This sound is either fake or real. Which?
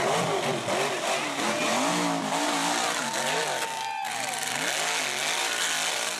real